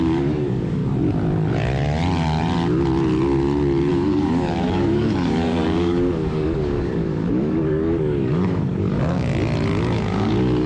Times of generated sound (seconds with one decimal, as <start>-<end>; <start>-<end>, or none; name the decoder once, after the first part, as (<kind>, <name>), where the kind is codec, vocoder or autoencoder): 0.0-0.8 (codec, DAC); 3.9-9.3; 9.8-10.7